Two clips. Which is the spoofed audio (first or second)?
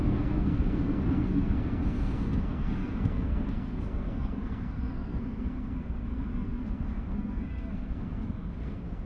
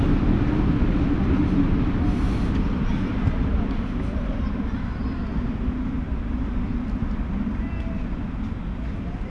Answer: first